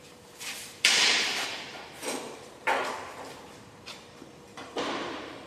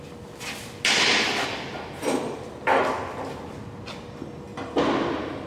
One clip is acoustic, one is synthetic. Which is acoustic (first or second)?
second